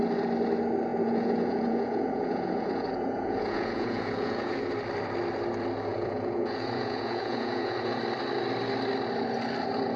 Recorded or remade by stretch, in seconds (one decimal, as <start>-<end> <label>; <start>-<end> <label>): 0.0-0.9 recorded; 0.9-4.7 remade; 4.7-5.9 recorded; 5.9-8.0 remade; 8.0-10.0 recorded

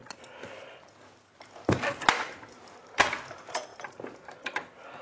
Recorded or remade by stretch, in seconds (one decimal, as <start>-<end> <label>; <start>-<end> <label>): 0.0-5.0 recorded

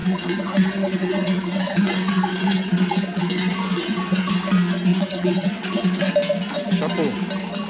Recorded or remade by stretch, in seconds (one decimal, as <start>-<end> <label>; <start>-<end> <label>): 0.0-4.3 remade; 4.3-4.9 recorded; 4.9-6.1 remade; 6.1-7.7 recorded

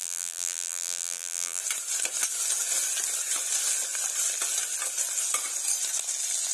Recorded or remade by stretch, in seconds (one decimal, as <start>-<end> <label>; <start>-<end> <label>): 0.0-1.6 remade; 1.6-6.5 recorded

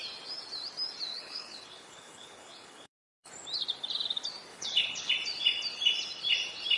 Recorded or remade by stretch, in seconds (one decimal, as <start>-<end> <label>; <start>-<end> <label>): 0.0-1.1 recorded; 1.1-3.3 remade; 3.3-4.5 recorded; 4.5-5.1 remade; 5.1-6.8 recorded

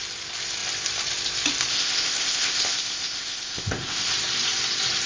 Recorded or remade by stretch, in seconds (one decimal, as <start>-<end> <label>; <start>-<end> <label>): 0.0-1.7 recorded; 1.7-4.1 remade; 4.1-5.1 recorded

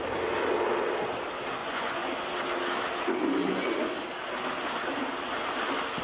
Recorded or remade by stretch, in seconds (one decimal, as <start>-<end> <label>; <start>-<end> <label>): 0.0-1.6 recorded; 1.6-2.1 remade; 2.1-3.4 recorded; 3.4-3.9 remade; 3.9-6.0 recorded